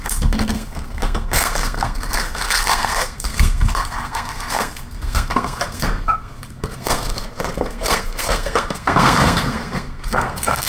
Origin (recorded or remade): remade